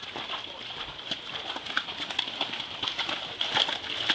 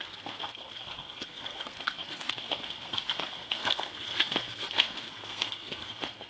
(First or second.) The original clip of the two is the first